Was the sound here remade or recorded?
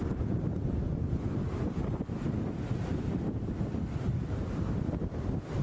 recorded